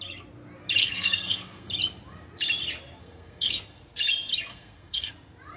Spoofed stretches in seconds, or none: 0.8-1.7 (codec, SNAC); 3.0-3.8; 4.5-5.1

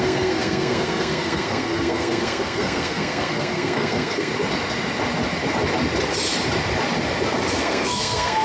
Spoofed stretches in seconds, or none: 0.0-4.3 (codec, SNAC); 7.6-8.4

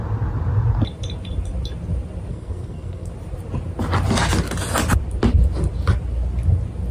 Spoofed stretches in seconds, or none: 2.3-3.1 (codec, SNAC)

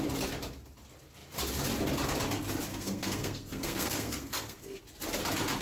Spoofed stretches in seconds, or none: 2.7-4.8 (codec, SNAC)

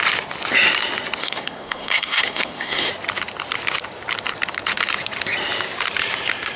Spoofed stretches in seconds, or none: 1.2-2.9 (codec, SNAC)